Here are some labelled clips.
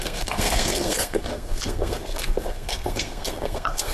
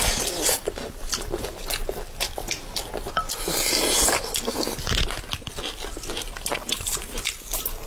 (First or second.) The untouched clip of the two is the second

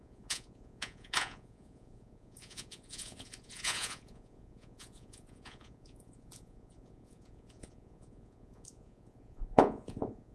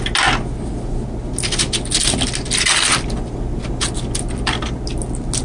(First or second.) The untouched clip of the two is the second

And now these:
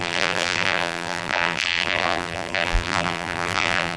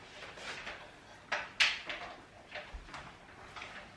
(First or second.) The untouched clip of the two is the second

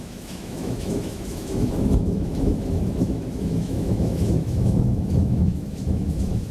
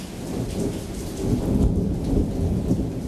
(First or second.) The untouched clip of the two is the second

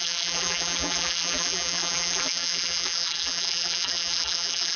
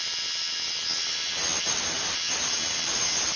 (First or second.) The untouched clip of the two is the second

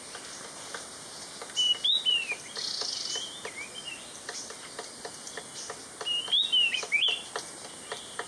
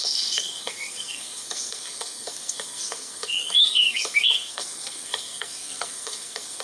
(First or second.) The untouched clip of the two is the first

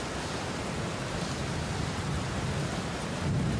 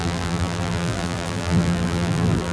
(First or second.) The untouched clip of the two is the first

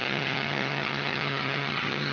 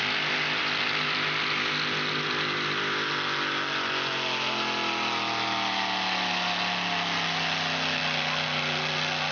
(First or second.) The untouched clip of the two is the second